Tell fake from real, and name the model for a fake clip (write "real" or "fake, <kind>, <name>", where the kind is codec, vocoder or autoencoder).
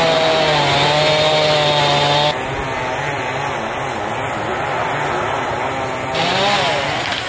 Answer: real